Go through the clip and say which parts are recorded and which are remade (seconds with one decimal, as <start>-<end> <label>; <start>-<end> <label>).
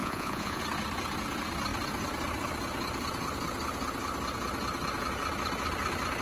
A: 0.0-0.6 remade; 0.6-6.2 recorded